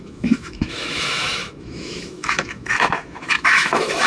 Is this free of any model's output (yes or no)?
no